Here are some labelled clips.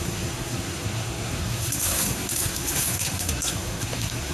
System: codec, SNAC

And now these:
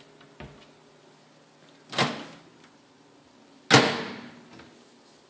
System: none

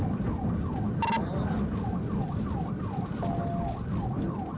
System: none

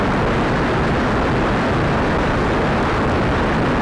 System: none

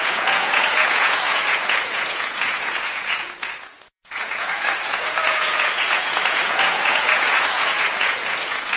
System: vocoder, Vocos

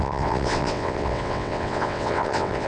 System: vocoder, WaveNeXt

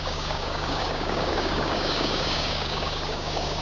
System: codec, DAC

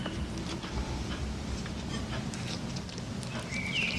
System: none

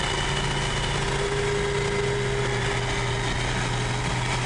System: none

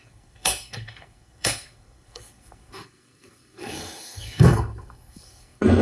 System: codec, SNAC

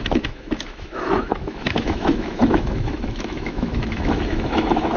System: autoencoder, DAC-VAE